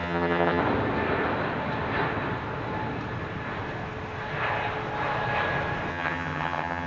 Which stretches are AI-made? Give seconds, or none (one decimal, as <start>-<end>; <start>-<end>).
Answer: 0.0-0.6; 5.9-6.9